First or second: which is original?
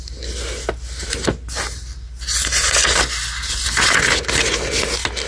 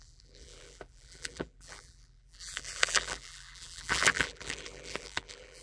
first